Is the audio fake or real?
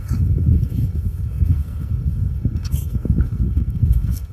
fake